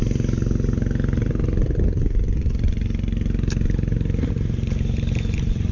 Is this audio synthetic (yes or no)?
no